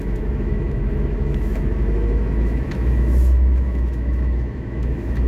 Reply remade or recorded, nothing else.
remade